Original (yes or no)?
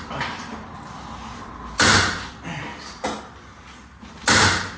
yes